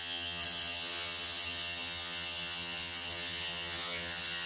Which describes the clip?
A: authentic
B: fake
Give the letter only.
B